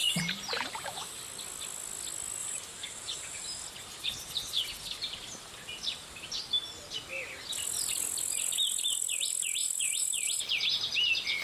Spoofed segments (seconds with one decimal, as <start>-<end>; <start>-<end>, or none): 0.0-1.2; 2.4-4.6; 9.6-10.8